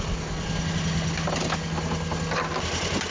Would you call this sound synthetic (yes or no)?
no